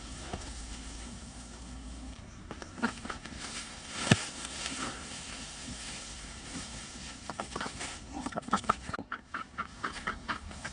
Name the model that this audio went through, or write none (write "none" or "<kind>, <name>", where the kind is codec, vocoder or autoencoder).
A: codec, SNAC